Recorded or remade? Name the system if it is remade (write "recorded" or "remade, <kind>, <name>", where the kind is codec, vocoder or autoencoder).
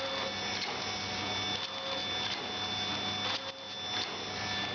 recorded